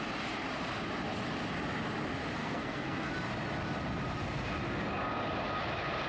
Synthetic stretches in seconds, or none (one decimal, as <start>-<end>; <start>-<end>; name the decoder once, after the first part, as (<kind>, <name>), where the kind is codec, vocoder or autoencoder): 2.4-3.1 (codec, SNAC)